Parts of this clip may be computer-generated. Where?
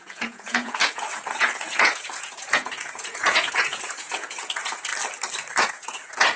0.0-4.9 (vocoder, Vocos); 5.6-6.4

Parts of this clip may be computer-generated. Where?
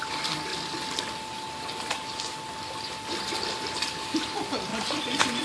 0.0-0.5 (vocoder, BigVGAN v2); 2.9-5.4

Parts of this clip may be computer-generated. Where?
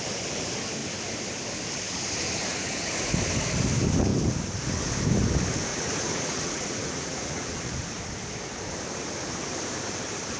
5.7-7.7 (vocoder, Vocos)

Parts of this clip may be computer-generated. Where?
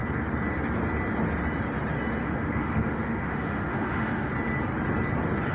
2.2-4.3 (autoencoder, DAC-VAE)